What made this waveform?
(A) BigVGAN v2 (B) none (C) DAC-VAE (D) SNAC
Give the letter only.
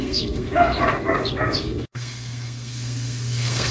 D